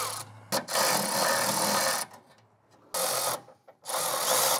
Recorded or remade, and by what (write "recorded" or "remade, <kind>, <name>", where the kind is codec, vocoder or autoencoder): recorded